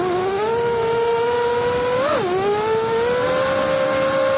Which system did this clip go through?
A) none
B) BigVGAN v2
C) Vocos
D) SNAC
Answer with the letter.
A